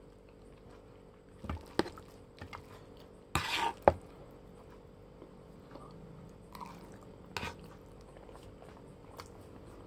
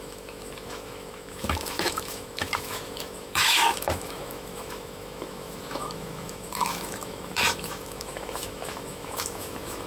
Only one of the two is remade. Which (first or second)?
second